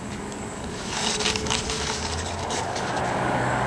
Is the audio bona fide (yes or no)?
no